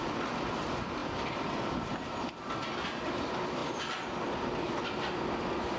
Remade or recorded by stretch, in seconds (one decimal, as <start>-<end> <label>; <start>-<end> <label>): 0.0-5.8 recorded